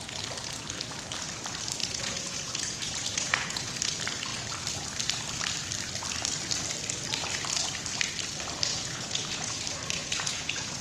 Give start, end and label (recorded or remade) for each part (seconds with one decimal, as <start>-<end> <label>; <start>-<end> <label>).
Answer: 0.0-1.8 recorded; 1.8-3.7 remade; 3.7-8.7 recorded; 8.7-9.6 remade; 9.6-10.0 recorded; 10.0-10.8 remade